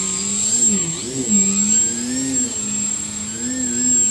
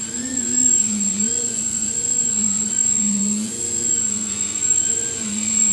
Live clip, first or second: first